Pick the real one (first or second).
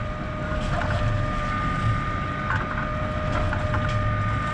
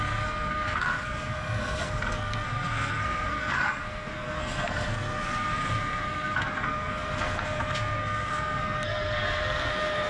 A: first